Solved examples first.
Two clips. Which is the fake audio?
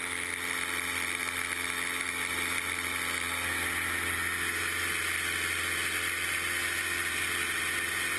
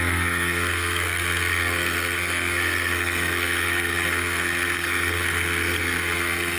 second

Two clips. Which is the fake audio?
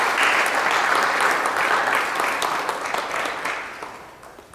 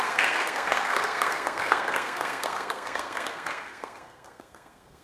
second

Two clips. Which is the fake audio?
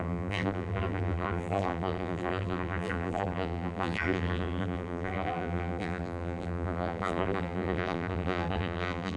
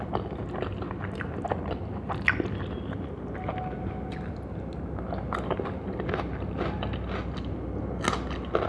first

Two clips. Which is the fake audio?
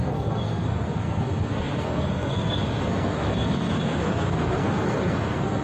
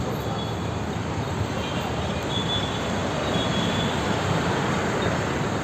first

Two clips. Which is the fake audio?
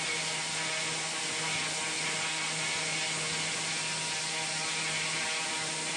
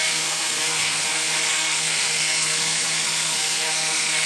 second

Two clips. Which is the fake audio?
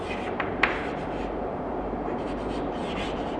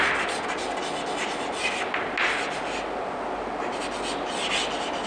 first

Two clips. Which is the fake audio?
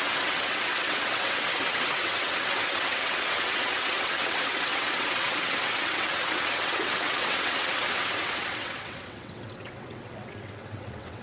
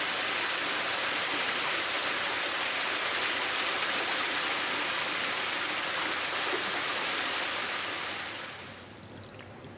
first